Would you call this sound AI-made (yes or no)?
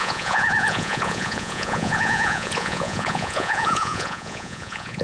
yes